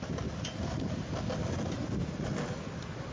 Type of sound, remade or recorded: recorded